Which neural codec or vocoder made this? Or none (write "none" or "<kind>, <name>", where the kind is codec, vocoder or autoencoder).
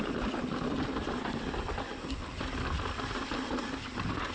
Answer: none